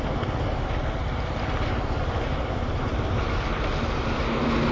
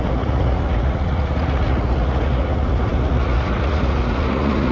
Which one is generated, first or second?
second